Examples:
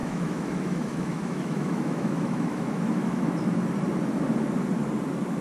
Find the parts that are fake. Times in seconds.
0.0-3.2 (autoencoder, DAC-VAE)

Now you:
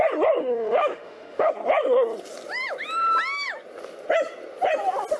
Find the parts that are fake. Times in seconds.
0.4-1.5 (autoencoder, DAC-VAE)

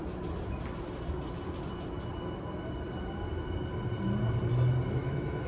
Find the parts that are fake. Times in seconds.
5.0-5.5 (autoencoder, DAC-VAE)

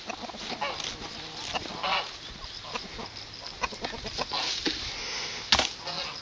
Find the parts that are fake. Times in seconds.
5.0-5.5 (autoencoder, DAC-VAE)

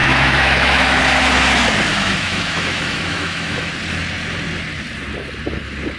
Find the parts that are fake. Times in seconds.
0.0-1.0 (autoencoder, DAC-VAE); 1.9-3.7

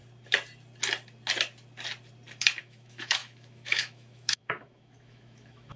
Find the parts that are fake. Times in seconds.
2.6-5.8 (autoencoder, DAC-VAE)

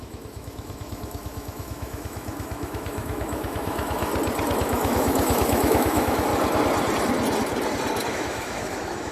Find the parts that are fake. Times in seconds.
0.0-4.1 (autoencoder, DAC-VAE); 4.6-6.3; 8.1-9.1

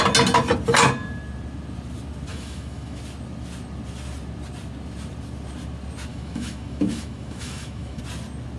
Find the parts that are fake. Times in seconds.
2.3-3.0 (autoencoder, DAC-VAE); 6.1-8.0